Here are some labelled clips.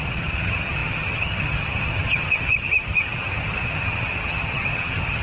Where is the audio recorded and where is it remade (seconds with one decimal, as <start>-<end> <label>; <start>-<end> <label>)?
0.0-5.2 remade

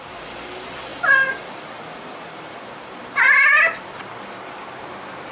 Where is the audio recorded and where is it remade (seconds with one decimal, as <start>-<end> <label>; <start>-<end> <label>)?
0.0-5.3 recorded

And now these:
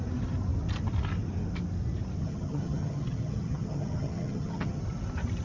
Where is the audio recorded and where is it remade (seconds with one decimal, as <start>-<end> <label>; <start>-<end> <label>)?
0.0-2.2 recorded; 2.2-4.8 remade; 4.8-5.4 recorded